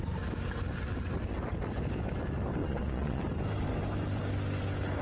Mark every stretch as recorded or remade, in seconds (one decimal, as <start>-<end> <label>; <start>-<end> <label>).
0.0-2.6 recorded; 2.6-3.2 remade; 3.2-5.0 recorded